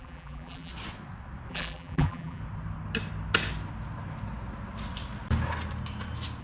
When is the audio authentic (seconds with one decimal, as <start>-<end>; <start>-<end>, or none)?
0.7-1.5; 2.4-6.4